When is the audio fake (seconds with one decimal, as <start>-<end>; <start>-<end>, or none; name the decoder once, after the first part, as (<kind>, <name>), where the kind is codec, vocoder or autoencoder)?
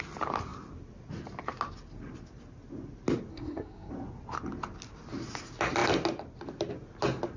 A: 3.3-3.9 (codec, SNAC)